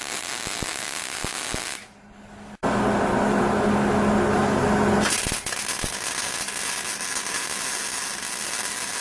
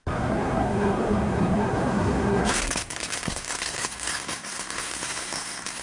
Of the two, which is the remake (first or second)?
second